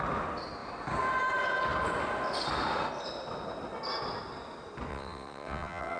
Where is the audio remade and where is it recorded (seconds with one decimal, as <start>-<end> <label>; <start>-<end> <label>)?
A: 0.0-4.9 recorded; 4.9-6.0 remade